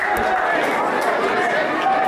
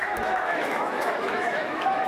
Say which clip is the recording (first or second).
first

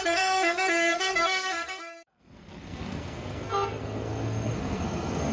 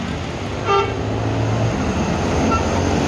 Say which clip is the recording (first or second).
second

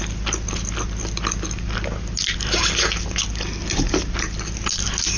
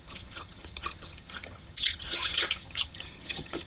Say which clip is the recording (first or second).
first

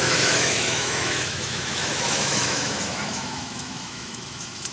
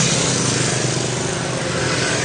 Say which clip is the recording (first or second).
second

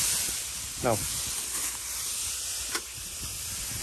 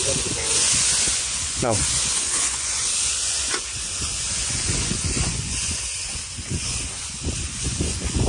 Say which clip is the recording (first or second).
first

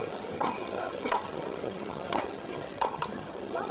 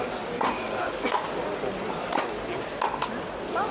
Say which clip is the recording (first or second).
second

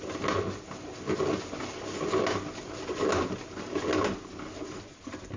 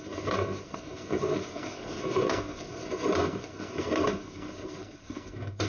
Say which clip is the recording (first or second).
first